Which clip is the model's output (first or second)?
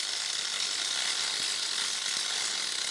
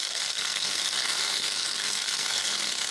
second